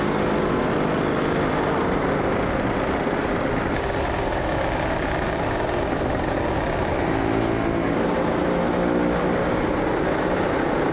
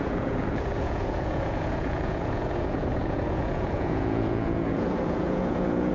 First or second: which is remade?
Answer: second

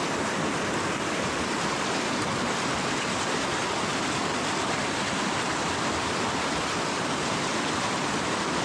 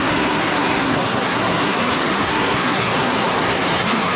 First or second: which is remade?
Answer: second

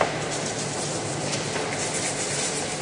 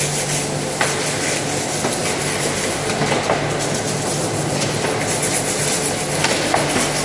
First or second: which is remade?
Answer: first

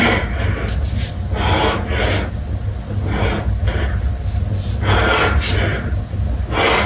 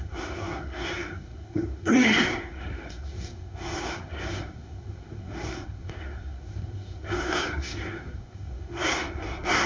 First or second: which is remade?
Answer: second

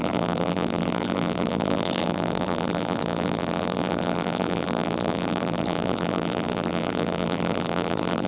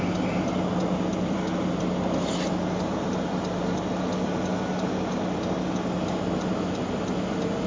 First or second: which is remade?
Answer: first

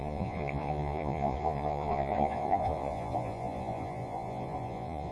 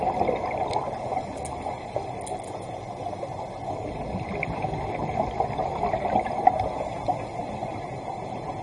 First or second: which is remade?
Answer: first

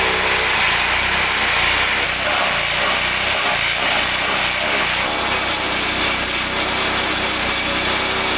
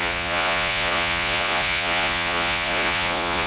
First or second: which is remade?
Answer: second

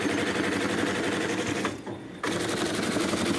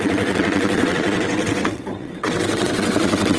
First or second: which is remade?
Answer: second